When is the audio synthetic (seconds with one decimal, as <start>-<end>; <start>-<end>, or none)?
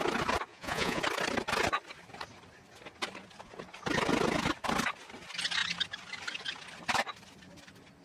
0.5-1.0